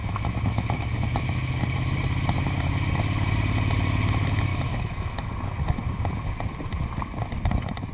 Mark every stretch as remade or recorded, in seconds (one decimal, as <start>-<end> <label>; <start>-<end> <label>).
0.0-1.2 remade; 1.2-4.5 recorded; 4.5-5.3 remade; 5.3-7.9 recorded